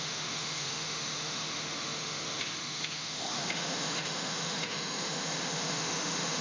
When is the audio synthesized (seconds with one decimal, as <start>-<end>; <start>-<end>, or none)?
0.0-6.4